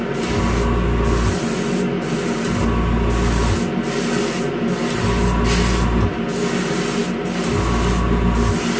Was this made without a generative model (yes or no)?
yes